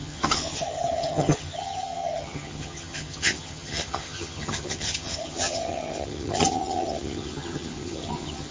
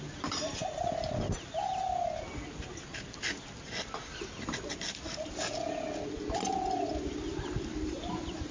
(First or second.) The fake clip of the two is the first